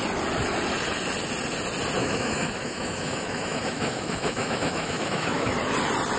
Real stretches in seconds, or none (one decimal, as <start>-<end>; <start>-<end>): 0.0-2.0; 5.5-6.2